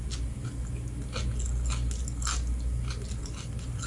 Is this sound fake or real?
real